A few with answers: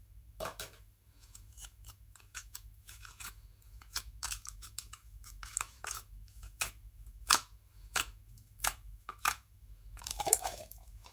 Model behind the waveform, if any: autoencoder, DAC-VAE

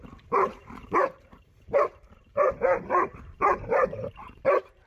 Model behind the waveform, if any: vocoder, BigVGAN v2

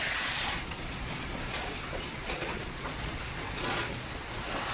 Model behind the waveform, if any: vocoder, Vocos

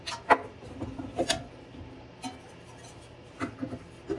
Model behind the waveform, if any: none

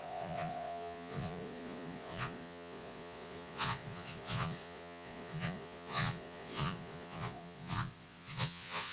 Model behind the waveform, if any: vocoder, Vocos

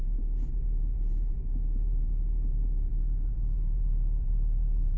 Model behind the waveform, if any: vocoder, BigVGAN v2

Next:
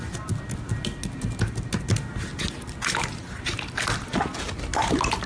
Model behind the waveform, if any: none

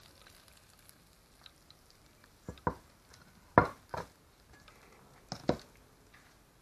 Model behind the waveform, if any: none